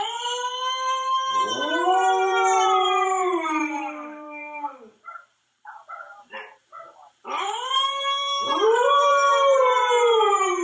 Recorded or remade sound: remade